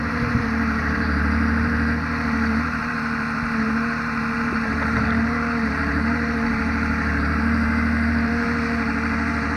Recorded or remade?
remade